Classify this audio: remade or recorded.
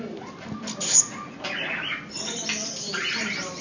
recorded